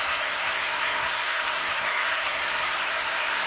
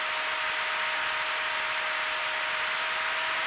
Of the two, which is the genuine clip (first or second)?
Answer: second